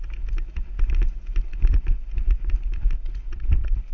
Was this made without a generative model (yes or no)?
yes